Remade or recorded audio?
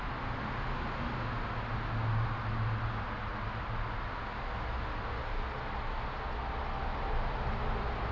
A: recorded